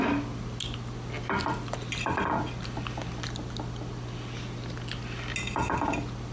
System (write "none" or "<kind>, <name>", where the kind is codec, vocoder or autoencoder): none